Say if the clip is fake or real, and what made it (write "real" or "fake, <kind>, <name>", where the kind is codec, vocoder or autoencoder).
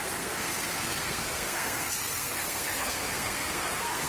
fake, codec, SNAC